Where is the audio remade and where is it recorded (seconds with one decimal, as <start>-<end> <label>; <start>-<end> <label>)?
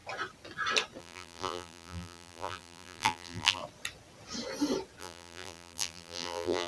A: 0.0-1.0 recorded; 1.0-3.6 remade; 3.6-5.0 recorded; 5.0-6.7 remade